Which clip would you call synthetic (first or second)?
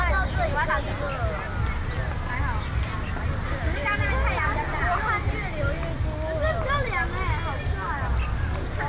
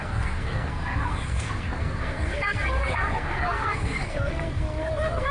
second